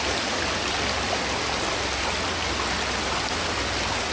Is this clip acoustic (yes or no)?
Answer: yes